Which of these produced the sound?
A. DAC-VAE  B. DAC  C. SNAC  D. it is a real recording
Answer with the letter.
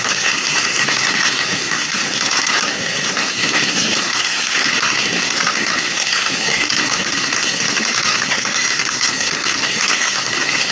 C